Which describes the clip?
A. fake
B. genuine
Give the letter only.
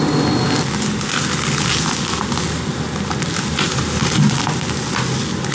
B